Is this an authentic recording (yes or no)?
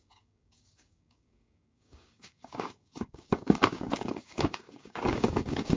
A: no